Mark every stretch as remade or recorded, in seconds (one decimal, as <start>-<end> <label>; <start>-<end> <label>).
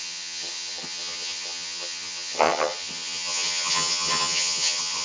0.0-5.0 remade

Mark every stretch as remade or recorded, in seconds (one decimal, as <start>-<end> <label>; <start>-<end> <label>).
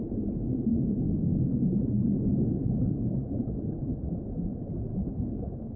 0.0-4.9 recorded; 4.9-5.8 remade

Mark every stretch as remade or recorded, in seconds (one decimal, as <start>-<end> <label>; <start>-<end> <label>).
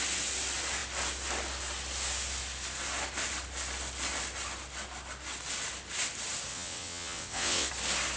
0.0-6.5 recorded; 6.5-7.7 remade; 7.7-8.2 recorded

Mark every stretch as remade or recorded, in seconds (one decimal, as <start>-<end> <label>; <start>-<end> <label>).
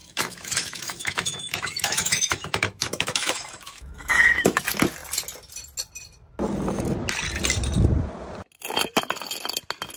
0.0-4.6 remade; 4.6-10.0 recorded